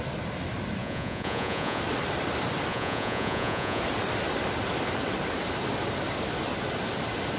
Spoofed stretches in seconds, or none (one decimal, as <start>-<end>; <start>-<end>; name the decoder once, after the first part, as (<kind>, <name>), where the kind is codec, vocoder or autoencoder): 0.8-1.8 (vocoder, Vocos); 2.7-3.8